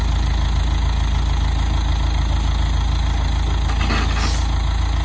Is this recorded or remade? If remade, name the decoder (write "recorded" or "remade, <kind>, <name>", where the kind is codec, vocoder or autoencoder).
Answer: recorded